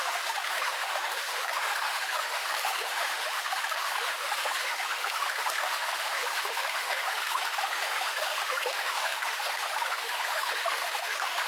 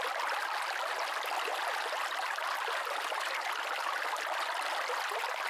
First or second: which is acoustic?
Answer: second